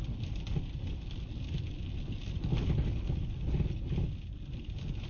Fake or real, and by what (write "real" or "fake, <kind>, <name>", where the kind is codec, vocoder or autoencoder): real